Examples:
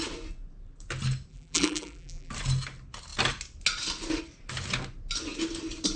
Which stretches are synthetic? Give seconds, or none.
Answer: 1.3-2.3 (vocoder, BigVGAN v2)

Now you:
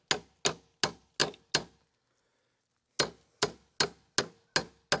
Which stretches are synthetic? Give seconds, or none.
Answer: none

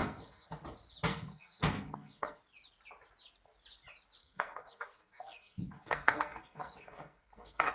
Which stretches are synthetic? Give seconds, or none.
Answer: 0.0-0.5 (codec, SNAC); 1.1-2.4; 4.2-7.7

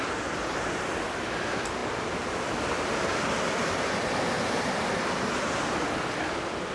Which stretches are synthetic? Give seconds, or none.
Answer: 0.0-1.8 (vocoder, BigVGAN v2); 5.0-6.7

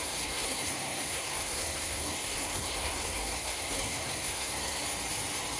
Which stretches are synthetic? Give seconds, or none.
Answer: 0.0-4.8 (codec, SNAC)

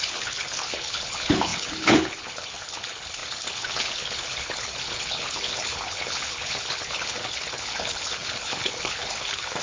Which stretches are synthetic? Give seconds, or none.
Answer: 0.0-9.6 (codec, HILCodec)